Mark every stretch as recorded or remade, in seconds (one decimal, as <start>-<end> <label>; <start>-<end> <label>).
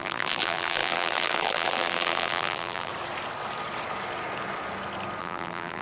0.0-2.9 remade; 2.9-5.2 recorded; 5.2-5.8 remade